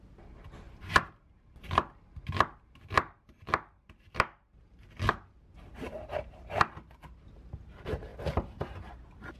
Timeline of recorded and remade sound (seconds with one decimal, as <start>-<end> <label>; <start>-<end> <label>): 0.0-9.4 recorded